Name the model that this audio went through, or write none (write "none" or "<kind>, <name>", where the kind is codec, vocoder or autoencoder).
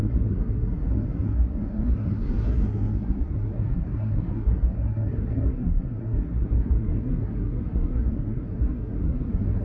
codec, SNAC